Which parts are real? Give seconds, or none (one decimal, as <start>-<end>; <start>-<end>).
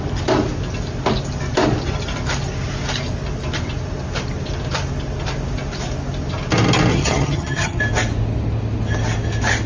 0.0-6.9; 7.8-9.7